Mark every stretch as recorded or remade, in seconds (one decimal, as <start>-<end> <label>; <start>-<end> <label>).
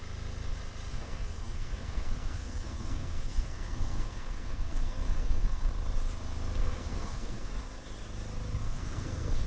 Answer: 0.0-0.9 recorded; 0.9-5.7 remade; 5.7-6.6 recorded; 6.6-7.5 remade; 7.5-8.6 recorded; 8.6-9.5 remade